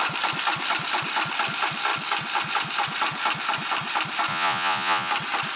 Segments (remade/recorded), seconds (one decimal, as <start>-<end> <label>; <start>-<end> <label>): 0.0-4.3 recorded; 4.3-5.1 remade; 5.1-5.6 recorded